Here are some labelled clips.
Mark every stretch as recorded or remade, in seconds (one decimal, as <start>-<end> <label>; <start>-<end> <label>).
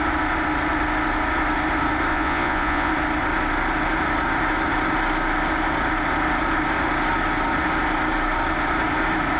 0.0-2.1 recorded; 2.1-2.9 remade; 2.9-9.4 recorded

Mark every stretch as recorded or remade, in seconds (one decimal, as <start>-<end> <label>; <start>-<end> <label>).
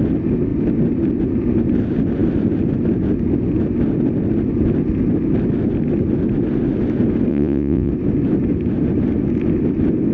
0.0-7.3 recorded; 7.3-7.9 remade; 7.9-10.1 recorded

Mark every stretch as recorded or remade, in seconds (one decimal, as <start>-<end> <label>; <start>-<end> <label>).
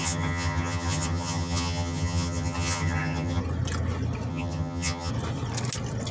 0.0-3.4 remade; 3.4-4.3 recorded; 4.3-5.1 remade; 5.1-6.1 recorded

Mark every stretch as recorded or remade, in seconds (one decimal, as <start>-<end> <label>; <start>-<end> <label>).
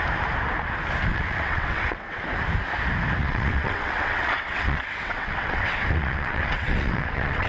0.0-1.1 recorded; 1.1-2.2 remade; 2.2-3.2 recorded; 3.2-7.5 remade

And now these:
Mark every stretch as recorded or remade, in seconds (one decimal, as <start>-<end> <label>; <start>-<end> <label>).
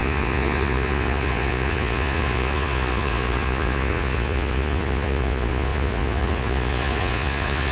0.0-7.7 remade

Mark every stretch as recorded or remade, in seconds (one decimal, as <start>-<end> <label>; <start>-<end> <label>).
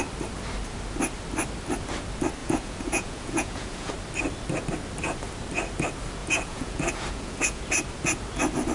0.0-2.4 recorded; 2.4-3.9 remade; 3.9-6.2 recorded; 6.2-7.6 remade; 7.6-8.7 recorded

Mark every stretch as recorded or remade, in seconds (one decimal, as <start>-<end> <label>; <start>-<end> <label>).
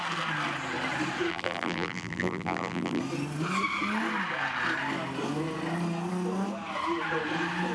0.0-1.3 recorded; 1.3-3.0 remade; 3.0-7.7 recorded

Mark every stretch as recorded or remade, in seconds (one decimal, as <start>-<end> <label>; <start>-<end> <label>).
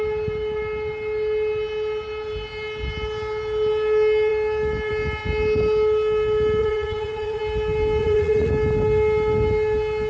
0.0-6.6 recorded; 6.6-7.4 remade; 7.4-8.0 recorded; 8.0-8.5 remade; 8.5-10.1 recorded